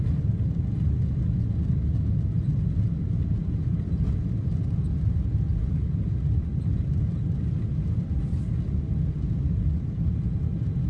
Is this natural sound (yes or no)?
yes